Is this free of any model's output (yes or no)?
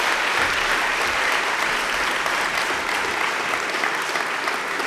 yes